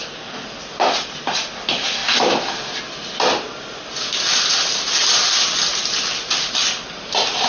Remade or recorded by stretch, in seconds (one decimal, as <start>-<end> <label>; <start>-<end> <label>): 0.0-7.5 recorded